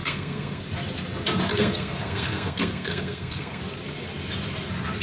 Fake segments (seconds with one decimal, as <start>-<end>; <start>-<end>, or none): 0.0-0.6; 1.5-3.6